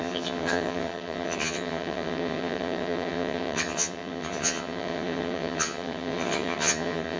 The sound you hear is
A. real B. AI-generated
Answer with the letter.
B